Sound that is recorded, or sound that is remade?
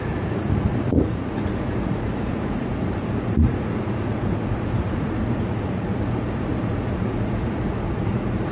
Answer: remade